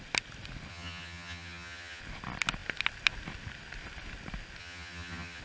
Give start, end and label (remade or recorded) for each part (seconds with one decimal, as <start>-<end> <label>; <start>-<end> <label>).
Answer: 0.0-0.7 recorded; 0.7-2.0 remade; 2.0-4.6 recorded; 4.6-5.4 remade